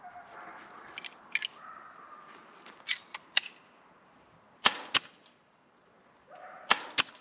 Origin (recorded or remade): recorded